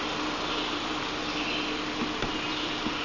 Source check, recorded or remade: recorded